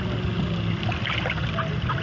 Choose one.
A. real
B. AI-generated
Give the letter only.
A